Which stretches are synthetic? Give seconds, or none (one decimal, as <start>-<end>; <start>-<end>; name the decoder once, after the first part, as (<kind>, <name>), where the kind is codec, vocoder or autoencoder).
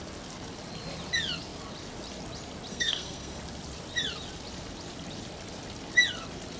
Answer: 2.7-3.4 (codec, SNAC)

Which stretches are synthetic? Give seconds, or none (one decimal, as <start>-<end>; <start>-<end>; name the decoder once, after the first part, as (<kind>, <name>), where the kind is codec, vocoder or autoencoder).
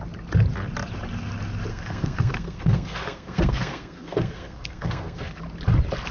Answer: 1.7-5.4 (codec, SNAC)